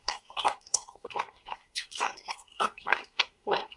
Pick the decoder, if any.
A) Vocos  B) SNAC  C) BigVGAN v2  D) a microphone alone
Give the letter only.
B